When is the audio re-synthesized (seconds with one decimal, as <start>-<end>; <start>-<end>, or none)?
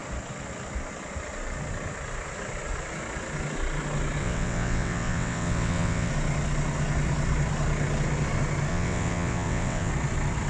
4.2-6.1; 8.7-9.9